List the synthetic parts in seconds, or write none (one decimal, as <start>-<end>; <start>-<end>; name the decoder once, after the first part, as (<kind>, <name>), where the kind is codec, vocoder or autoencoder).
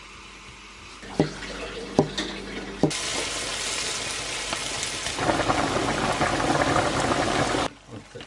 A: none